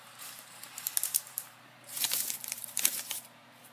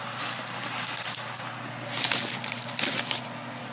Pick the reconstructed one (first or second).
first